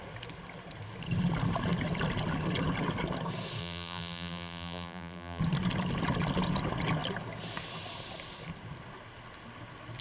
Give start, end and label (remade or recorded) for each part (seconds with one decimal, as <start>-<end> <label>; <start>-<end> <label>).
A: 0.0-3.6 recorded; 3.6-5.4 remade; 5.4-10.0 recorded